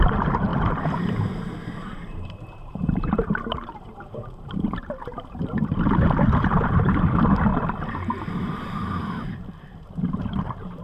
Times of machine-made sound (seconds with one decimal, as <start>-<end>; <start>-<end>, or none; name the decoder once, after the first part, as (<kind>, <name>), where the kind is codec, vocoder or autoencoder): 0.0-7.5 (vocoder, BigVGAN v2); 8.2-10.8